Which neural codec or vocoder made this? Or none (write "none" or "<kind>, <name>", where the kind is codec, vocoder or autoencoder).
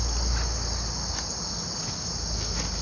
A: none